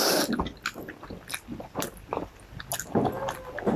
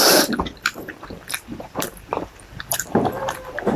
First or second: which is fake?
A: second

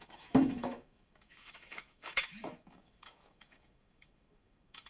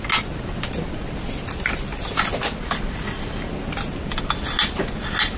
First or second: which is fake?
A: first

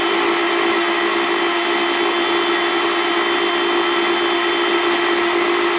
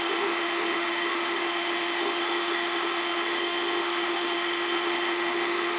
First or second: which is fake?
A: second